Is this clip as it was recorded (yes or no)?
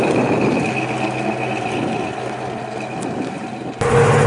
yes